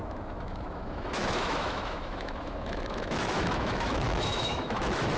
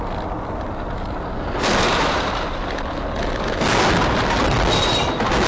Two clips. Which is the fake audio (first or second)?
first